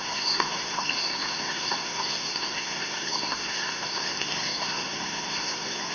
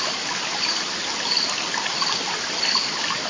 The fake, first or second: first